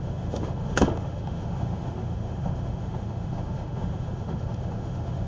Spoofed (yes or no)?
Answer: yes